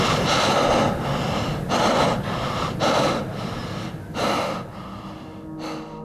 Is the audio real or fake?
real